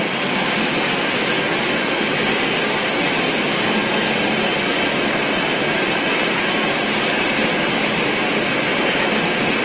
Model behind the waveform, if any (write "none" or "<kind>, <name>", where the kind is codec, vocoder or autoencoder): none